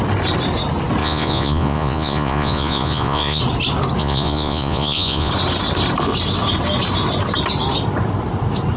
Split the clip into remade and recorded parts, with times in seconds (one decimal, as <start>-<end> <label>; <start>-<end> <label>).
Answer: 0.0-1.0 recorded; 1.0-3.4 remade; 3.4-4.0 recorded; 4.0-5.3 remade; 5.3-8.8 recorded